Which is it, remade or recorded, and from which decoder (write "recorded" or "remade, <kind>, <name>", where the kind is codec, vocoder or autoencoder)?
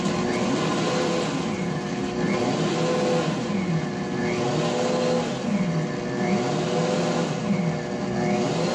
recorded